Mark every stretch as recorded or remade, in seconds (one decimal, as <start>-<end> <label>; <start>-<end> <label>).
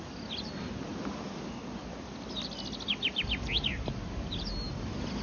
0.0-5.2 recorded